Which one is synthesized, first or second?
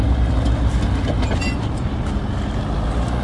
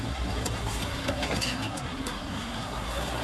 second